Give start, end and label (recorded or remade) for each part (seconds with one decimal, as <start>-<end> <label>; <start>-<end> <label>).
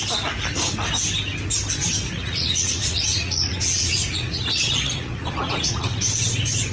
0.0-2.0 recorded; 2.0-6.0 remade; 6.0-6.7 recorded